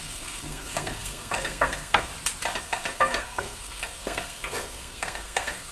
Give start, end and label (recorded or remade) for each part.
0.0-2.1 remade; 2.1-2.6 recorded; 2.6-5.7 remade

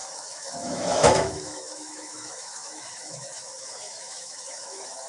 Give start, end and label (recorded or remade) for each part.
0.0-5.1 remade

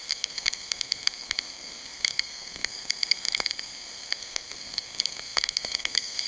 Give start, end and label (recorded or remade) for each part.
0.0-6.3 remade

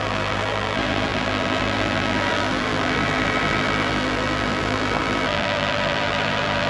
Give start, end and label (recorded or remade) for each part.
0.0-6.7 remade

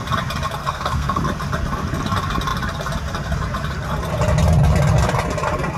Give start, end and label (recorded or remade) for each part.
0.0-0.6 recorded; 0.6-1.2 remade; 1.2-5.8 recorded